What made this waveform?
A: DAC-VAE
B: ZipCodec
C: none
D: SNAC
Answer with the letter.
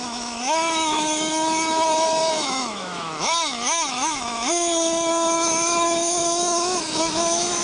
A